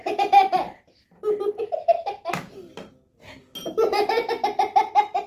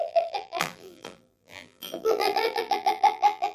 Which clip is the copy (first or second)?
second